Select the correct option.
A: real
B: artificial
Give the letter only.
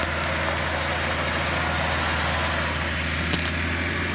A